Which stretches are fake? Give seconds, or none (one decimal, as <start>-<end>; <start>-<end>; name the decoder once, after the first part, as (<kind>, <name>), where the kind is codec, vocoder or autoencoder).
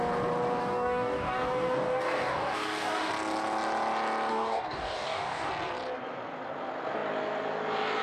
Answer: 0.6-3.1 (codec, DAC); 4.3-5.5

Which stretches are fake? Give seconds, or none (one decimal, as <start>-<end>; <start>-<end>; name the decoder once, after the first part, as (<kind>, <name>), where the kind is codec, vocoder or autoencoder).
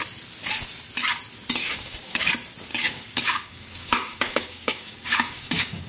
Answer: 1.6-2.3 (codec, DAC); 2.7-5.9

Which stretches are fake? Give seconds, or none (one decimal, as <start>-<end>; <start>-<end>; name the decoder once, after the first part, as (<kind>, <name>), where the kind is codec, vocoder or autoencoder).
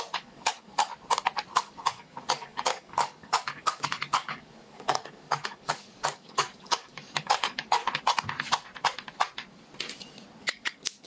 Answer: 0.0-0.9 (codec, DAC); 1.5-7.8; 10.4-11.1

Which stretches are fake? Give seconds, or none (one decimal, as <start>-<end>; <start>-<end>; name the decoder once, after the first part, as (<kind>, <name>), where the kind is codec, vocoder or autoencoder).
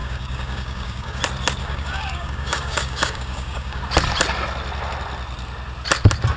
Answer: 0.0-1.2 (codec, DAC); 1.6-3.8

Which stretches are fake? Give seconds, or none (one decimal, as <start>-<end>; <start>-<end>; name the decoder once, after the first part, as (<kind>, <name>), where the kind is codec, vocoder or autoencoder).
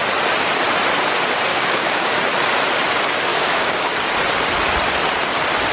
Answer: 1.5-2.2 (codec, DAC); 3.3-3.9